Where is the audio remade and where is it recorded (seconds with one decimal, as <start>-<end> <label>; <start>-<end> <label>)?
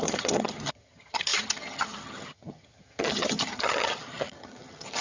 0.0-5.0 remade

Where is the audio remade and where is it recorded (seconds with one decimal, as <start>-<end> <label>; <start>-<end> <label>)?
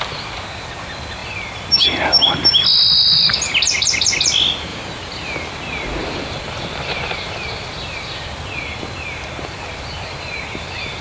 0.0-4.7 recorded; 4.7-5.5 remade; 5.5-11.0 recorded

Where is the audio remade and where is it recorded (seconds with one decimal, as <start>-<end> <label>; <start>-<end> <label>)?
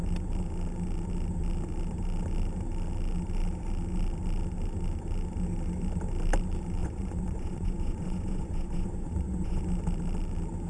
0.0-6.8 recorded; 6.8-9.6 remade; 9.6-10.7 recorded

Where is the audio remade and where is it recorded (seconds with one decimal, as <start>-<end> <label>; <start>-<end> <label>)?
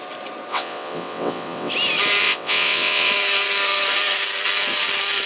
0.0-0.5 recorded; 0.5-1.7 remade; 1.7-2.2 recorded; 2.2-3.1 remade; 3.1-5.3 recorded